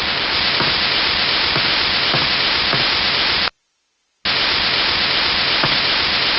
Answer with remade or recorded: recorded